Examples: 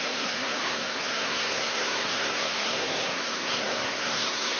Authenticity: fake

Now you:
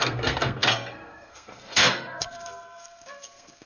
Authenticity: fake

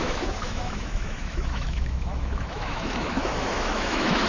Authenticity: fake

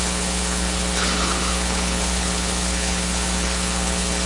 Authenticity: fake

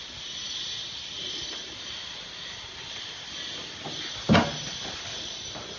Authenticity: real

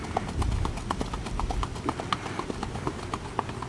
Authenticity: real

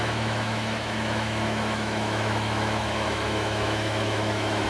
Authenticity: fake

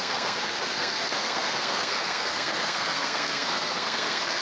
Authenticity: fake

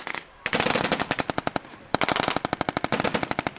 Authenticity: real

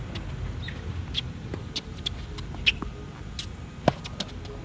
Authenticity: real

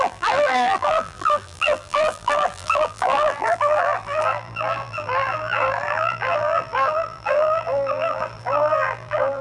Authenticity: fake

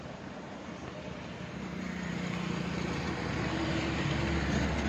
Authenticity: real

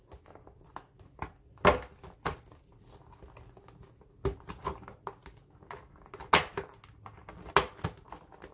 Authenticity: real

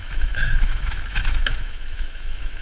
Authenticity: fake